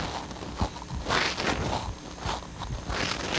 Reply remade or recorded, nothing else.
recorded